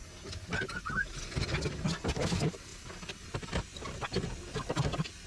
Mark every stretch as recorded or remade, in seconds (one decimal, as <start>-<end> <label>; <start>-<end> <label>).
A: 0.0-5.3 recorded